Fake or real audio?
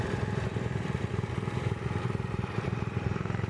fake